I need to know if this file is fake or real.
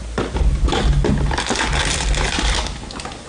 real